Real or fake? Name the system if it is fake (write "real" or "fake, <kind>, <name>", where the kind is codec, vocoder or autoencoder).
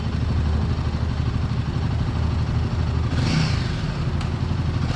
real